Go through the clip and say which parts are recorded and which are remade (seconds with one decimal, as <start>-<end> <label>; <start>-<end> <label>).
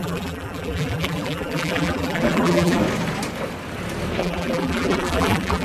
0.0-2.8 remade; 2.8-4.2 recorded; 4.2-5.6 remade